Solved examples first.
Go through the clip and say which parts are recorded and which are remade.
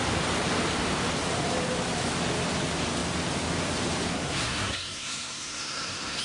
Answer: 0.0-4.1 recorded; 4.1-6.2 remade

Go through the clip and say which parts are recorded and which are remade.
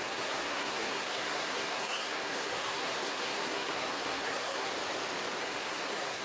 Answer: 0.0-4.7 remade; 4.7-5.4 recorded; 5.4-6.2 remade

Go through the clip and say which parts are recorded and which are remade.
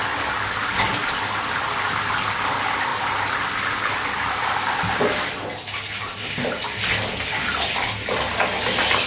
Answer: 0.0-9.1 recorded